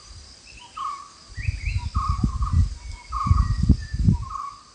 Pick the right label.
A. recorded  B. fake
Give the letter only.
A